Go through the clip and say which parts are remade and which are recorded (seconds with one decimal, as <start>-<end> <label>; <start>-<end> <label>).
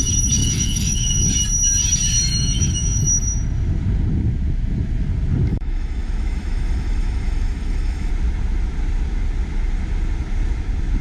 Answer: 0.0-0.4 recorded; 0.4-1.2 remade; 1.2-2.3 recorded; 2.3-3.0 remade; 3.0-5.5 recorded; 5.5-8.1 remade; 8.1-11.0 recorded